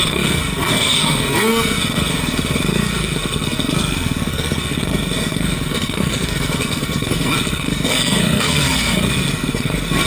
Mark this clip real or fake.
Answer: fake